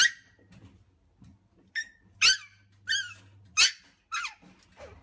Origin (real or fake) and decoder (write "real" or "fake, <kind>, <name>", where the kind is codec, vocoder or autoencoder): real